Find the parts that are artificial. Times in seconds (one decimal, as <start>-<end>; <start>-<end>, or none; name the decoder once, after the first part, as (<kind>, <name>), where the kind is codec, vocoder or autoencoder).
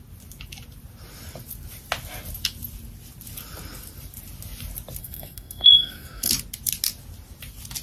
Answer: 5.0-6.3 (codec, SNAC)